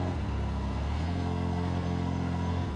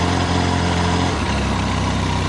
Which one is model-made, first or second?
first